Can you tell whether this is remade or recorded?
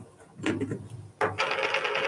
recorded